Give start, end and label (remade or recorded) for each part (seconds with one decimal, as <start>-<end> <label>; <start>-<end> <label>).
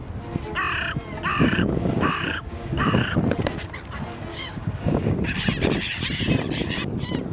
0.0-1.3 recorded; 1.3-3.2 remade; 3.2-4.3 recorded; 4.3-5.2 remade; 5.2-7.3 recorded